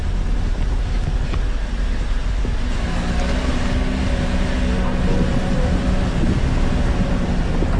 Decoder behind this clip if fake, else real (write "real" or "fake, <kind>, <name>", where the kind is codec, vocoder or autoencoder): real